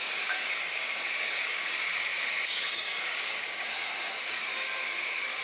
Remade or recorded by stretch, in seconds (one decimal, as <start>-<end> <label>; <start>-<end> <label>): 0.0-5.4 remade